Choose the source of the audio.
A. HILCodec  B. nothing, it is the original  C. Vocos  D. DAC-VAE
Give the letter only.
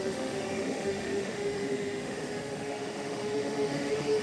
D